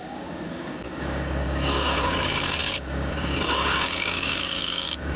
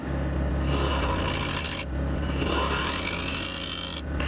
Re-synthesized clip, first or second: first